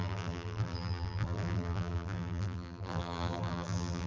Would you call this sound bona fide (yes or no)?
no